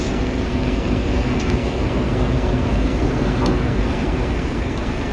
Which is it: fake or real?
fake